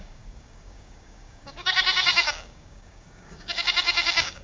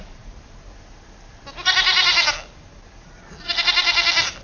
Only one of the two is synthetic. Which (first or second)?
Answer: first